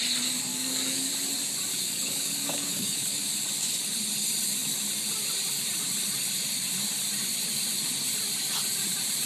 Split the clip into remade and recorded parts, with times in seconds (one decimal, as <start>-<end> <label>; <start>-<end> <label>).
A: 0.0-0.5 recorded; 0.5-1.1 remade; 1.1-1.7 recorded; 1.7-3.3 remade; 3.3-9.3 recorded